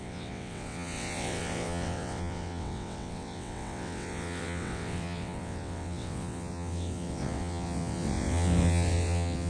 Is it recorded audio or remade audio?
remade